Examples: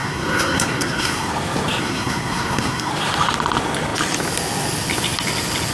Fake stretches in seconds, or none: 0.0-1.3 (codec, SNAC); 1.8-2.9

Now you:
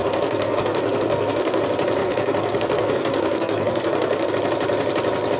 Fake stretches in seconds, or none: 0.0-1.6 (codec, SNAC); 2.0-4.3

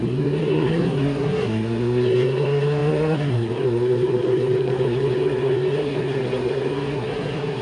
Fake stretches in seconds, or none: 0.0-7.6 (codec, SNAC)

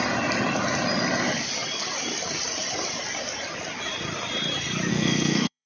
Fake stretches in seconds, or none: 4.9-5.7 (codec, SNAC)